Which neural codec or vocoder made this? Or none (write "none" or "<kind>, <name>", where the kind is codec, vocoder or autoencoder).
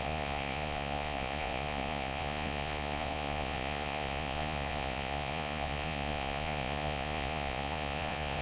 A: vocoder, Vocos